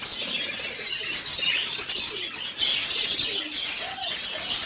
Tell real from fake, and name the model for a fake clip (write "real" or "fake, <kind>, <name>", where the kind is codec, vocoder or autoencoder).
real